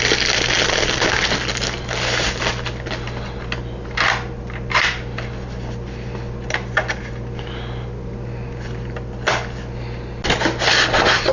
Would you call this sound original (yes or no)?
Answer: yes